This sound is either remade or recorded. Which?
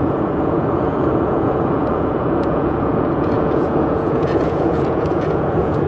remade